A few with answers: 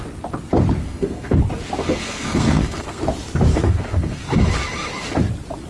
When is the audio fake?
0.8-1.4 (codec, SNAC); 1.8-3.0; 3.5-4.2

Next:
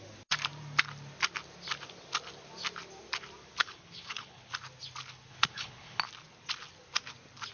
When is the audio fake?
3.6-4.5 (codec, HILCodec); 5.3-6.0